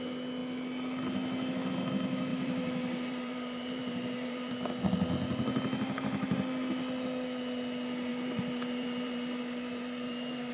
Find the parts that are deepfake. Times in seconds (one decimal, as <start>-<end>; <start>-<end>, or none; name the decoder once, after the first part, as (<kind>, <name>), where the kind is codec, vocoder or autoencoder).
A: 2.3-4.5 (vocoder, BigVGAN v2); 8.1-10.5